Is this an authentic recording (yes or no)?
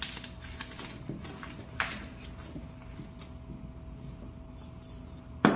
yes